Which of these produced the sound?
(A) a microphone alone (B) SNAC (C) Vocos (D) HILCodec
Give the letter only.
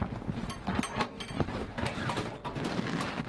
A